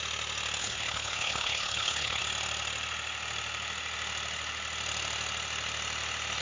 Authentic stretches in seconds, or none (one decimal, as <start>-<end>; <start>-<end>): 0.0-0.6; 2.2-6.4